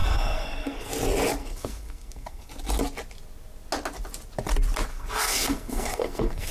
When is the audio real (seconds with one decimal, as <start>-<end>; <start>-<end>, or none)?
0.9-1.4; 2.5-4.9